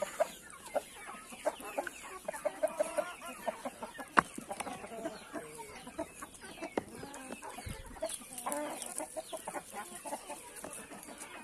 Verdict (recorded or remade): recorded